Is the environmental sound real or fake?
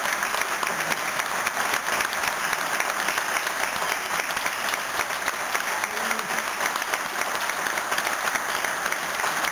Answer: real